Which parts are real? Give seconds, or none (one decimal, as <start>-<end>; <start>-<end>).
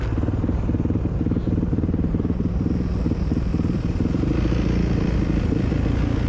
0.0-1.4; 2.7-3.5; 5.7-6.3